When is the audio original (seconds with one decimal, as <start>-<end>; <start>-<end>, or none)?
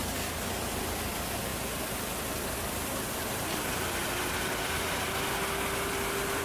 0.5-6.4